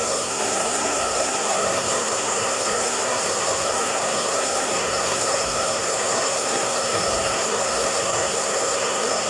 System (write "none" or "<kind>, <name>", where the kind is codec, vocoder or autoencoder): codec, SNAC